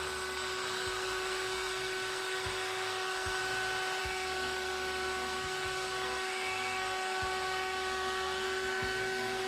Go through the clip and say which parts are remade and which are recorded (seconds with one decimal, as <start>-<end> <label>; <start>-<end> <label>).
0.0-3.4 remade; 3.4-4.0 recorded; 4.0-9.5 remade